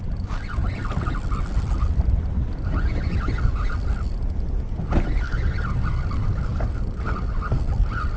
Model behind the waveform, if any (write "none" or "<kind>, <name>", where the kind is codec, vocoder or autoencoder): none